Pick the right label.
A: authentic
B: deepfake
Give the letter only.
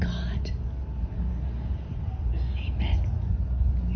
A